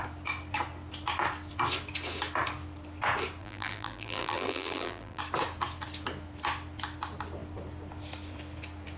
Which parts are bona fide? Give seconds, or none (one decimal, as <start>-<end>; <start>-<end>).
0.0-3.4; 5.2-9.0